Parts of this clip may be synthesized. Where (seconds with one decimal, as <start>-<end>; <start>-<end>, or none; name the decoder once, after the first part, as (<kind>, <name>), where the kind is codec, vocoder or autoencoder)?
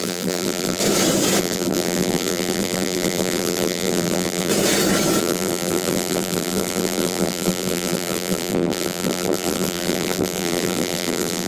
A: 0.0-0.8 (vocoder, BigVGAN v2); 1.4-4.5; 5.2-11.5